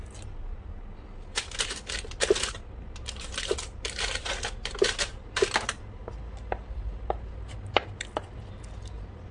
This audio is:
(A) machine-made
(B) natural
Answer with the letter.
B